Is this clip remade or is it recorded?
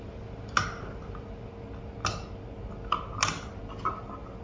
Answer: recorded